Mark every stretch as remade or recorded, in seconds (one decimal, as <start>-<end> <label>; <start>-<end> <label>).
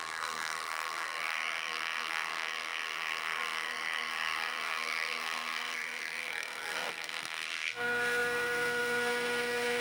0.0-9.8 remade